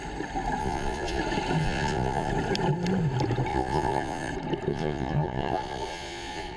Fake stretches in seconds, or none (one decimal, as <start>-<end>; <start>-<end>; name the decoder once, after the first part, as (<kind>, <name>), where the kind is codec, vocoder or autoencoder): 0.6-1.2 (vocoder, Vocos); 1.6-2.3; 3.5-4.3; 4.7-6.6